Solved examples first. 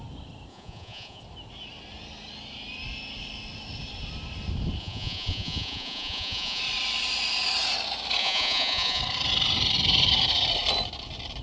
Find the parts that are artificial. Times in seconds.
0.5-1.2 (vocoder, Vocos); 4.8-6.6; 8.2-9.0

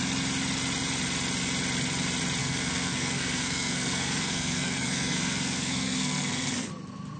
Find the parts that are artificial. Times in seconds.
2.4-6.7 (codec, SNAC)